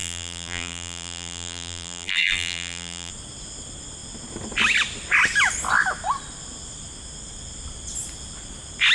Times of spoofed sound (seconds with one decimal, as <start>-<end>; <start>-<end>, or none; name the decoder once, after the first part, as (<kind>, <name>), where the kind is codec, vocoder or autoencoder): 0.0-3.1 (vocoder, BigVGAN v2)